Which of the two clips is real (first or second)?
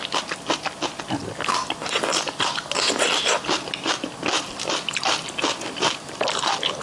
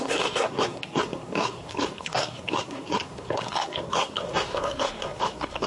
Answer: first